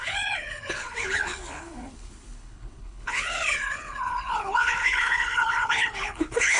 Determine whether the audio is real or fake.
fake